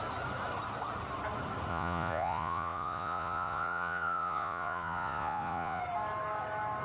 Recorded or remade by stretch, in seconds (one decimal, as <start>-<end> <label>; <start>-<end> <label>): 0.0-1.7 recorded; 1.7-5.8 remade; 5.8-6.8 recorded